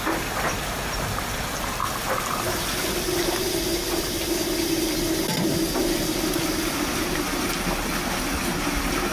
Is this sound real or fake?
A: real